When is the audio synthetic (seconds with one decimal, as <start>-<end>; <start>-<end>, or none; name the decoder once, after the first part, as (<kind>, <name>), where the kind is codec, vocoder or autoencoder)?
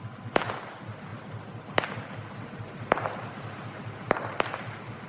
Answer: none